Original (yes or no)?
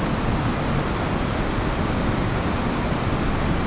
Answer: yes